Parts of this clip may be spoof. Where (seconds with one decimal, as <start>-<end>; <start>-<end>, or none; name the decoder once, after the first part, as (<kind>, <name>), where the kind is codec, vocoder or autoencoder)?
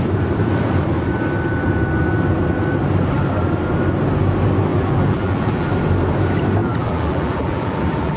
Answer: 4.7-5.7 (vocoder, BigVGAN v2); 6.6-8.2